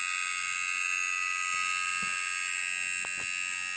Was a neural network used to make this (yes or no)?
no